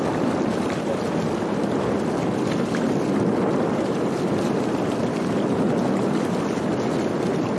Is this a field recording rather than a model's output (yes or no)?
yes